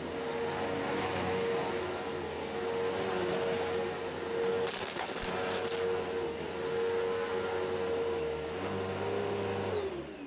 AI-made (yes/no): no